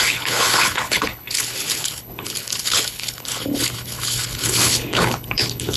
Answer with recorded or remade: remade